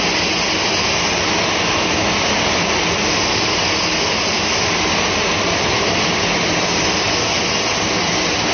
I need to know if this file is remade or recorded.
recorded